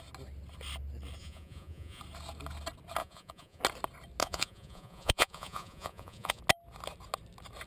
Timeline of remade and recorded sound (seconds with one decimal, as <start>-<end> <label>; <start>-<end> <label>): 0.0-1.2 recorded; 1.2-2.0 remade; 2.0-3.0 recorded; 3.0-3.6 remade; 3.6-4.2 recorded; 4.2-6.4 remade; 6.4-7.7 recorded